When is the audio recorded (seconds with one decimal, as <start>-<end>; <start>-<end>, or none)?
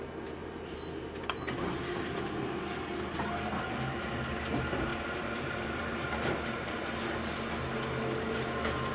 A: 0.0-0.4; 1.8-3.5; 4.2-4.9; 6.7-8.9